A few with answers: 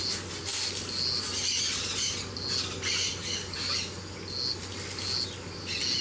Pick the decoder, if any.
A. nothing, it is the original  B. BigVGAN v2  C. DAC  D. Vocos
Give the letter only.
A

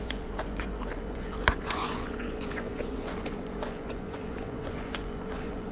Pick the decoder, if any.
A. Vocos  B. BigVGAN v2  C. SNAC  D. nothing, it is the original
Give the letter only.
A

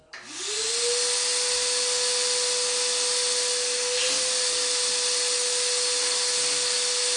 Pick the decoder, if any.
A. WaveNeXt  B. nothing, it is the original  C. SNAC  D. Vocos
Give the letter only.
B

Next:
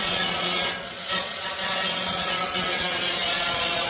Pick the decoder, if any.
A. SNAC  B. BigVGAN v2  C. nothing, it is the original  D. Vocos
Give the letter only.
D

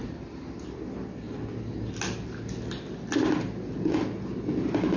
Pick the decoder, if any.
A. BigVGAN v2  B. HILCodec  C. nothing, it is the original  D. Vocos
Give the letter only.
C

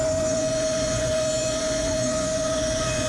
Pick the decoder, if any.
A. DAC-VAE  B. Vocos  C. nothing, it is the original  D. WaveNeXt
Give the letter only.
B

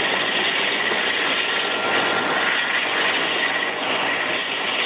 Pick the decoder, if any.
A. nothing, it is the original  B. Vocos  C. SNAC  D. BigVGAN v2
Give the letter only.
B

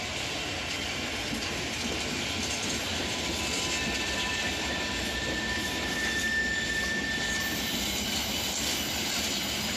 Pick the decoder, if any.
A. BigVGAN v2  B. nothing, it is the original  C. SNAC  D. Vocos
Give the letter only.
B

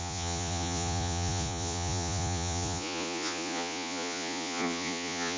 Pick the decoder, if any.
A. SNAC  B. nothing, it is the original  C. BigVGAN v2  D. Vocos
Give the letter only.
D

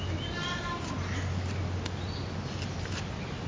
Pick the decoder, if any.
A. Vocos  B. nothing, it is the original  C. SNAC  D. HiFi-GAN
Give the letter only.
B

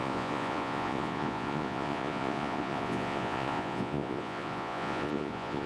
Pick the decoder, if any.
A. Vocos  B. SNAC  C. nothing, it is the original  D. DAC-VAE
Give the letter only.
A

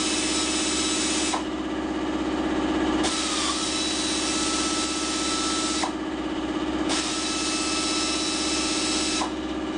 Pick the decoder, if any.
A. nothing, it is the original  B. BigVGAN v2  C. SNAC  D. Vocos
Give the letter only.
A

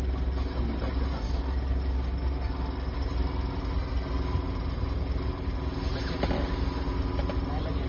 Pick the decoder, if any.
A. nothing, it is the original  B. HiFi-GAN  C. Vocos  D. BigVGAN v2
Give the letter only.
A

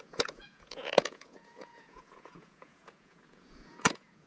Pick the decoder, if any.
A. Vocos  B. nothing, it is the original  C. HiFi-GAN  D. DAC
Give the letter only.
A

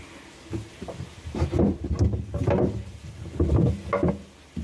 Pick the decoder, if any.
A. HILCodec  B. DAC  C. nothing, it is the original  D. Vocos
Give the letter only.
C